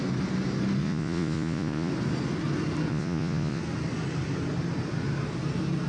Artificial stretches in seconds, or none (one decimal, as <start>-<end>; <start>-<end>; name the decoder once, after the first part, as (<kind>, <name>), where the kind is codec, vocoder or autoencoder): 0.8-1.9 (vocoder, Vocos); 2.9-3.6